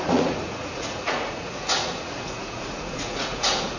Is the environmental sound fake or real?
fake